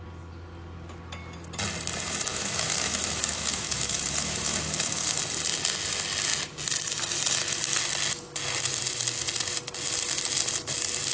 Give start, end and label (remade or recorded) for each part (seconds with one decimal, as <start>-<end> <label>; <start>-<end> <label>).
0.0-2.3 recorded; 2.3-5.2 remade; 5.2-11.1 recorded